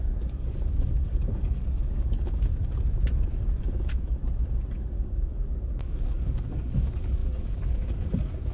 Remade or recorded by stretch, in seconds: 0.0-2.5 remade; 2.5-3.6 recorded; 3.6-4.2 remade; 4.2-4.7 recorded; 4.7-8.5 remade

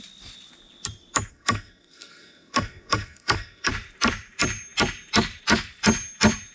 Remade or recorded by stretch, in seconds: 0.0-1.3 recorded; 1.3-3.7 remade; 3.7-6.5 recorded

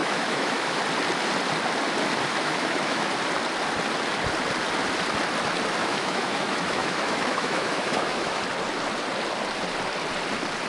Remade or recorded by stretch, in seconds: 0.0-0.8 remade; 0.8-2.3 recorded; 2.3-3.1 remade; 3.1-5.8 recorded; 5.8-8.4 remade; 8.4-10.7 recorded